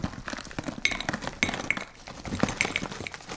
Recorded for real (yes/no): yes